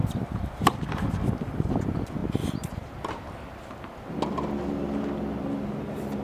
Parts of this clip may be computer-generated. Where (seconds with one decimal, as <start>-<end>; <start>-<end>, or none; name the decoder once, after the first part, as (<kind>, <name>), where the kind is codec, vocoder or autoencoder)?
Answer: 0.0-1.7 (vocoder, BigVGAN v2)